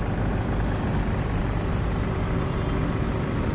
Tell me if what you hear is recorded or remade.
recorded